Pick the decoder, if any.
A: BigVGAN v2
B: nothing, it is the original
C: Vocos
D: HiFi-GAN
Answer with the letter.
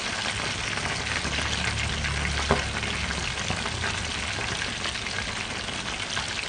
B